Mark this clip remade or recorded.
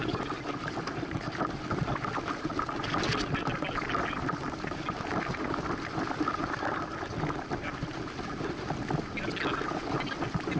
recorded